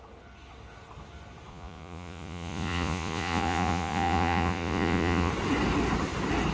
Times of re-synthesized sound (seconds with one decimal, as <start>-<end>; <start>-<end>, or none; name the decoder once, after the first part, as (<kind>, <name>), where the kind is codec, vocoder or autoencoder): 1.5-5.3 (vocoder, Vocos)